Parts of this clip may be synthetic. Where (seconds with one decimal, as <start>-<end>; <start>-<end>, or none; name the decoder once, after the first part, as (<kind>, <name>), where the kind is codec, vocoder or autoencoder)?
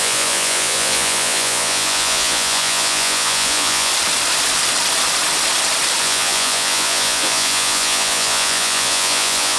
0.0-3.9 (vocoder, Vocos); 6.0-9.6